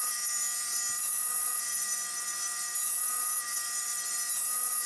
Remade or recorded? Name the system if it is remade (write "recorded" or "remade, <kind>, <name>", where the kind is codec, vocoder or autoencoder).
remade, vocoder, BigVGAN v2